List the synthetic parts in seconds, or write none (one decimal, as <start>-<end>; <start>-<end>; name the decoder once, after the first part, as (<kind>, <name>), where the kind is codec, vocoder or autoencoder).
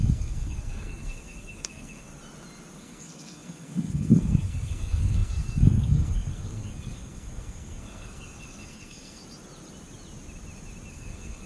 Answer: 0.0-2.1 (codec, SNAC); 2.8-9.2; 10.9-11.5